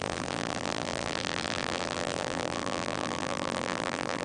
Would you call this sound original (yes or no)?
no